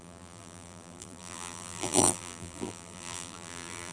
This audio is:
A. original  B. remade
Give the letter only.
B